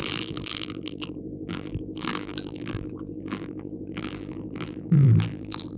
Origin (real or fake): fake